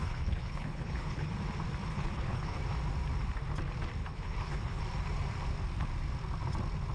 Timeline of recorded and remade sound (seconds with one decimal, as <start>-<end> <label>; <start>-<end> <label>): 0.0-1.3 remade; 1.3-1.9 recorded; 1.9-2.6 remade; 2.6-4.0 recorded; 4.0-4.8 remade; 4.8-6.9 recorded